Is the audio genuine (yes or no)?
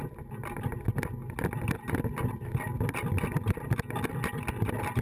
yes